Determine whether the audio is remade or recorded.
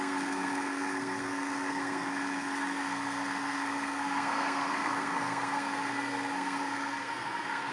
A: remade